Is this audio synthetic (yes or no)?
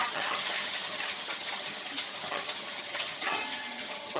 yes